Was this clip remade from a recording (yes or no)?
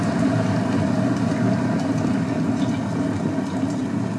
no